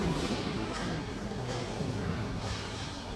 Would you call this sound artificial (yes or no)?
yes